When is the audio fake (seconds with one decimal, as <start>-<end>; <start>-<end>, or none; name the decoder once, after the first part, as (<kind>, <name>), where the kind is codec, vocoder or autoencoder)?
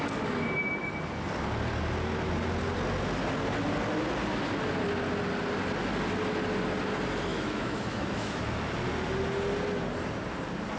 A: 7.3-8.4 (autoencoder, DAC-VAE)